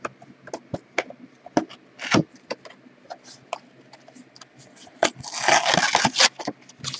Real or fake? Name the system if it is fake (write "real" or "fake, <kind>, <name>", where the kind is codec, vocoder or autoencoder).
real